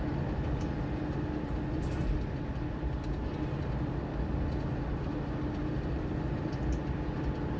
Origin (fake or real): fake